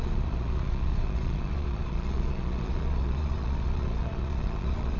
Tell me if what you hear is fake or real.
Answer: fake